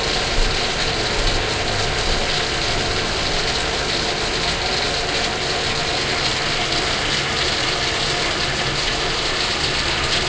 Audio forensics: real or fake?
real